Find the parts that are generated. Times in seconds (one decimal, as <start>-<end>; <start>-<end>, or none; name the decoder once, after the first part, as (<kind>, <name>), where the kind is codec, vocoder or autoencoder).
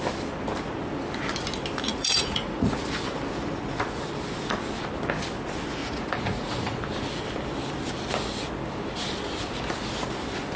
1.9-2.7 (vocoder, Vocos); 5.8-6.8